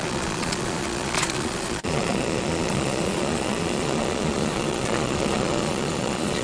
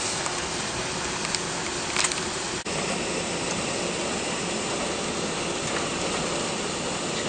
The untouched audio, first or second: second